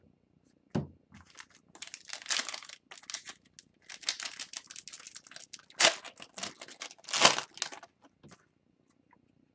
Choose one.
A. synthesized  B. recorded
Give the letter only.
B